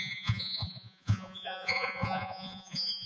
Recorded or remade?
remade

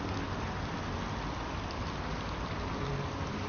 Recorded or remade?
recorded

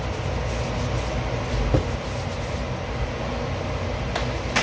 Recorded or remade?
recorded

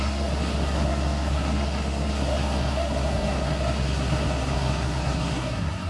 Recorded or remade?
remade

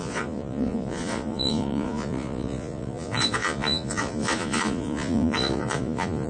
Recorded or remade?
remade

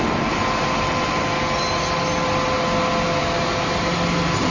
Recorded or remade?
recorded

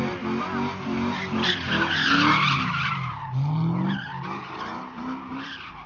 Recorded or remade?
recorded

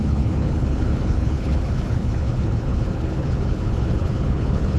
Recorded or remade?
remade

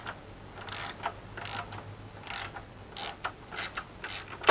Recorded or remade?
recorded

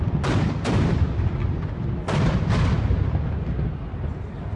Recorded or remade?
recorded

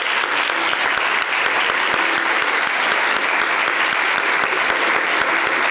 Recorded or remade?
recorded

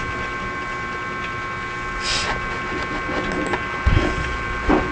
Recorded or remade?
recorded